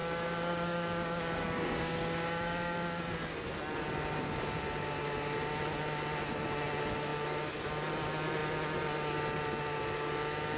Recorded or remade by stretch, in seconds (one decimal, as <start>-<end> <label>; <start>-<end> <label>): 0.0-3.0 remade; 3.0-10.6 recorded